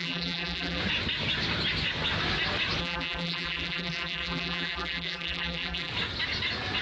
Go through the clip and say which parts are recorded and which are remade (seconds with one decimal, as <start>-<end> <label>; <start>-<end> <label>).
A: 0.0-0.8 remade; 0.8-2.8 recorded; 2.8-5.9 remade; 5.9-6.8 recorded

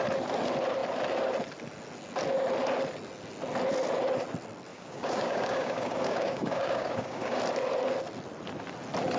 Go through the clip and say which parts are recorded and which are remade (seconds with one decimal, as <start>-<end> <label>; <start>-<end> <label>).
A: 0.0-4.7 recorded; 4.7-7.4 remade; 7.4-9.2 recorded

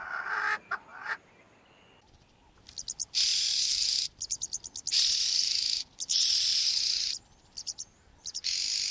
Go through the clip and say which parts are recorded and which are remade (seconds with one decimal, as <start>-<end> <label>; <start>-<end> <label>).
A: 0.0-0.9 recorded; 0.9-1.6 remade; 1.6-3.3 recorded; 3.3-3.9 remade; 3.9-8.9 recorded

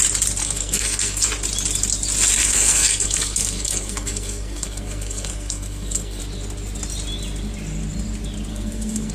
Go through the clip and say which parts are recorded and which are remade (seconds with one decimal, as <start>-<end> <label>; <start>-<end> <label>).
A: 0.0-0.4 recorded; 0.4-1.3 remade; 1.3-2.4 recorded; 2.4-6.2 remade; 6.2-8.5 recorded; 8.5-9.1 remade

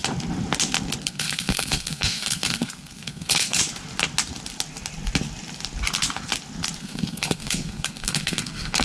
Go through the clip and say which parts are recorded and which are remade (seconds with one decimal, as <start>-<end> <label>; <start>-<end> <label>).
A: 0.0-1.0 recorded; 1.0-3.6 remade; 3.6-6.8 recorded; 6.8-8.8 remade